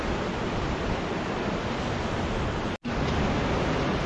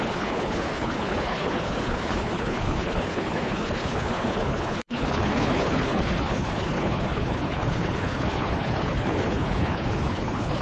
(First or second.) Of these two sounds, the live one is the first